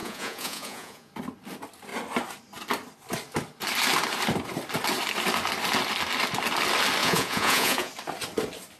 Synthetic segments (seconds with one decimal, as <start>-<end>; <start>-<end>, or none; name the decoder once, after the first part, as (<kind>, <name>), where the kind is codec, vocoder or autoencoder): 0.0-1.1 (vocoder, Vocos); 7.0-7.9